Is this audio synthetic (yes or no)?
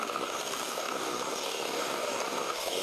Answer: yes